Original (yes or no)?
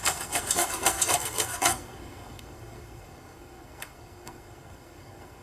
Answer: no